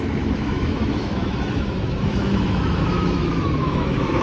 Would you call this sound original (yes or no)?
no